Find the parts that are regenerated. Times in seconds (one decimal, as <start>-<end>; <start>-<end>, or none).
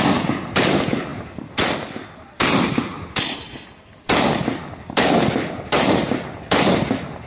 none